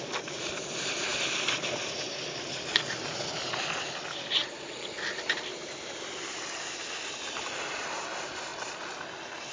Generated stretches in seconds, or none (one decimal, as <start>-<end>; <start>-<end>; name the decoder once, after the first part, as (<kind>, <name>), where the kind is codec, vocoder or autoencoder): none